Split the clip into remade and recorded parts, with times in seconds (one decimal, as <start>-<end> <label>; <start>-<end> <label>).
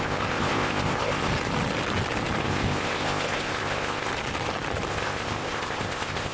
0.0-1.3 remade; 1.3-2.4 recorded; 2.4-4.1 remade; 4.1-4.9 recorded; 4.9-6.3 remade